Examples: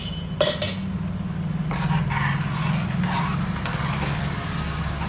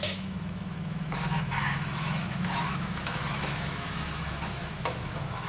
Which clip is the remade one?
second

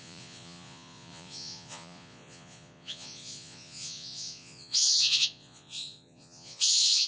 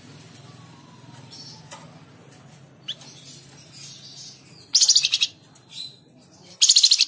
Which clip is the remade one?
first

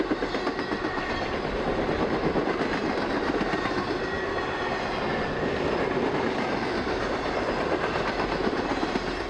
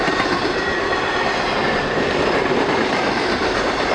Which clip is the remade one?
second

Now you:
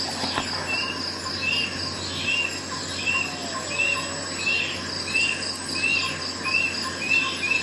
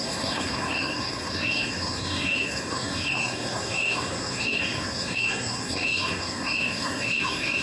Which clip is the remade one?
second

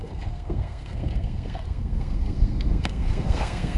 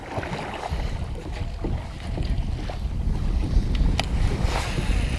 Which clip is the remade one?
first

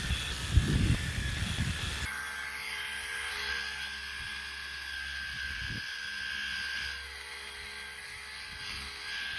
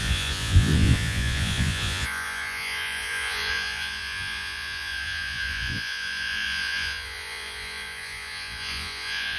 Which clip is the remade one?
second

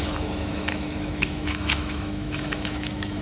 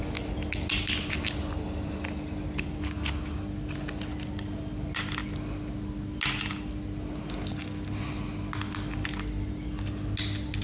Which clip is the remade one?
first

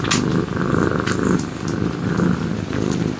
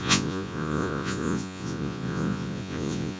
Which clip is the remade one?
second